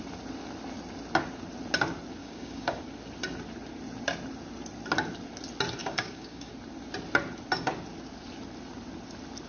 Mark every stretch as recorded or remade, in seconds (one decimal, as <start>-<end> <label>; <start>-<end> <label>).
0.0-2.2 recorded; 2.2-2.8 remade; 2.8-5.8 recorded; 5.8-6.5 remade; 6.5-9.5 recorded

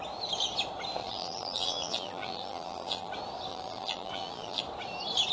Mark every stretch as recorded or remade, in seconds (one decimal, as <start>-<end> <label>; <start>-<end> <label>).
0.0-1.0 recorded; 1.0-3.1 remade; 3.1-3.5 recorded; 3.5-4.6 remade; 4.6-5.3 recorded

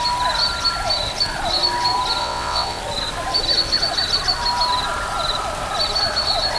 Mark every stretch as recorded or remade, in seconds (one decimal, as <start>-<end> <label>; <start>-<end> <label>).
0.0-2.2 recorded; 2.2-2.8 remade; 2.8-6.6 recorded

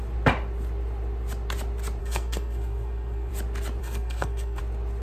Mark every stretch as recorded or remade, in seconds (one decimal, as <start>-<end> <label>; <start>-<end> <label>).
0.0-2.0 recorded; 2.0-3.3 remade; 3.3-3.8 recorded; 3.8-4.6 remade; 4.6-5.0 recorded

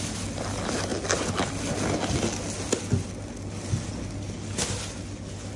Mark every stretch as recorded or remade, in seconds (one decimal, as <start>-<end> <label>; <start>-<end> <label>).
0.0-5.6 recorded